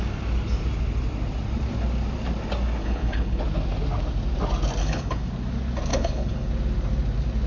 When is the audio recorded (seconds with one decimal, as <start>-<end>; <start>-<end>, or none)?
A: 0.0-2.8; 3.4-4.8; 5.3-5.9; 6.5-7.5